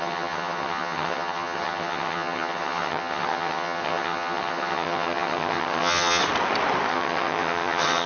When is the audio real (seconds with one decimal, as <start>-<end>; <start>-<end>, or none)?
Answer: 6.2-6.9